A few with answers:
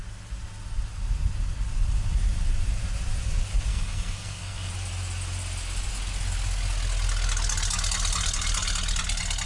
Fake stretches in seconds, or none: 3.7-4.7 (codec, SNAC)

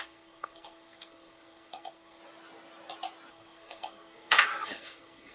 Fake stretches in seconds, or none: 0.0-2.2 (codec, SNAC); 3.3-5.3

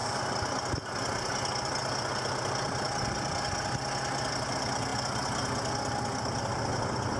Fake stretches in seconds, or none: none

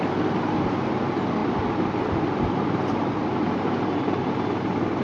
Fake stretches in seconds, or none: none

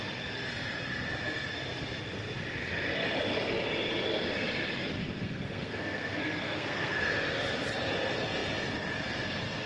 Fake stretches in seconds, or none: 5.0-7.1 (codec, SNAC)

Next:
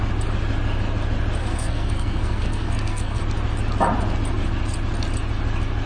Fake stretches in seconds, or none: 1.4-3.2 (codec, SNAC)

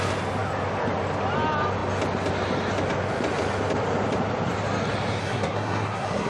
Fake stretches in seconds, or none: 5.2-6.3 (codec, SNAC)

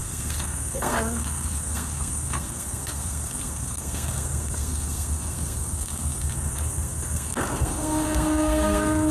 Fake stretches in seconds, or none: 0.0-9.1 (codec, SNAC)